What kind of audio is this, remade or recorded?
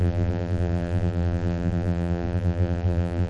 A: remade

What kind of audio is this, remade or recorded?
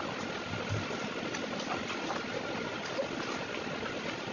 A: recorded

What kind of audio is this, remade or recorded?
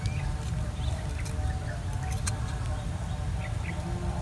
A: recorded